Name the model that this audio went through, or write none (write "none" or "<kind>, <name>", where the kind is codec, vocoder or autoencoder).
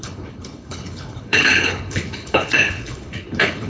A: codec, HILCodec